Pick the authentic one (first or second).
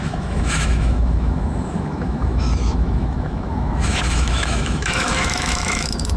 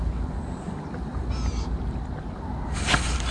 second